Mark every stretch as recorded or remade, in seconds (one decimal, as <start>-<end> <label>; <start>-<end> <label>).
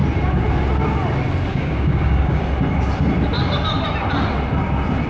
0.0-1.5 recorded; 1.5-2.4 remade; 2.4-5.1 recorded